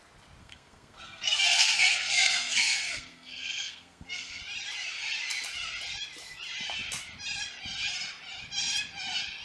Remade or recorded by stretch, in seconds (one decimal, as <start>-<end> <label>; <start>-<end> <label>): 0.0-0.4 recorded; 0.4-4.4 remade; 4.4-9.4 recorded